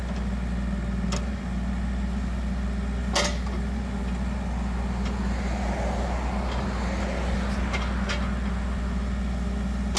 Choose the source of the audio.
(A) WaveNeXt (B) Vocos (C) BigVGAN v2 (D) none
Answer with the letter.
D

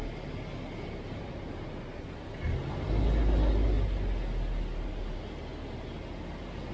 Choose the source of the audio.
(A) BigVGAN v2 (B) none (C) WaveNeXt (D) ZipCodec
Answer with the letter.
B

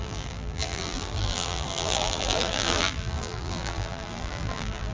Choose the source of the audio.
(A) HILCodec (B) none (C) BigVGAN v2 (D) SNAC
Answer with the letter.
C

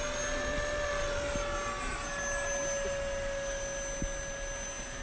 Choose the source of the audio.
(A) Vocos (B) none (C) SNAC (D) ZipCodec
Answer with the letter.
B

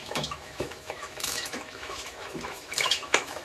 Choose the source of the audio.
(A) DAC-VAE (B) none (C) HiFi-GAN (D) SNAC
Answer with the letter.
A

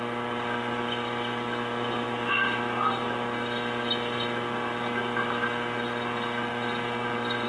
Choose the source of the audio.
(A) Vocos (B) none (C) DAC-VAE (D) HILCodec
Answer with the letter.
B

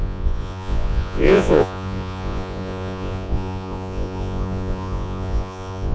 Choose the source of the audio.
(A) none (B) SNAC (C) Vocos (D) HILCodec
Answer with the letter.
C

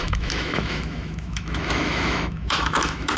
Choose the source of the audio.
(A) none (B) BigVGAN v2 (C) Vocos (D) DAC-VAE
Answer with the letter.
D